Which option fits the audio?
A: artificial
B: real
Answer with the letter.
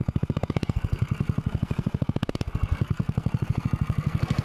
A